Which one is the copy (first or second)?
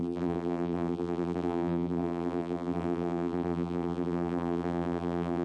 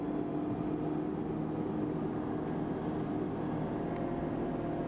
first